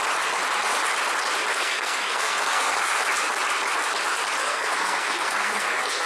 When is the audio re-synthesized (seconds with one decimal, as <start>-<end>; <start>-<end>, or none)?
1.5-3.0; 4.4-6.1